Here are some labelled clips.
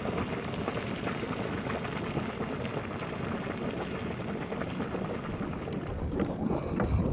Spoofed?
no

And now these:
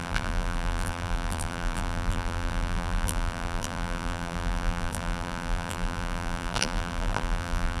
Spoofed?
yes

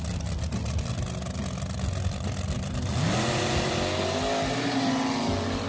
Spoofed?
no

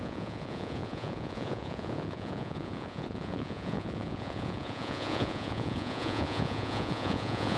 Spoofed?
yes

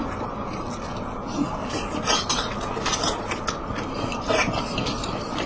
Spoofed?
no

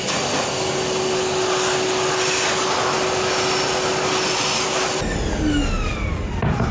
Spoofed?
no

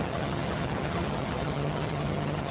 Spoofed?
yes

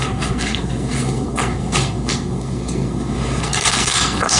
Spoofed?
yes